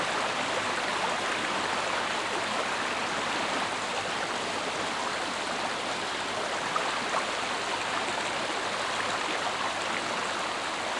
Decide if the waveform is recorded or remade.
recorded